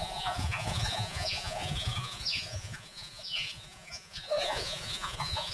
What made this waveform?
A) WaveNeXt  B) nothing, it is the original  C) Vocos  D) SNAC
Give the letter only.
C